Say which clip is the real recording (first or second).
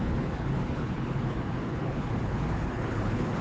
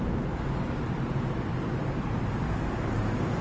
second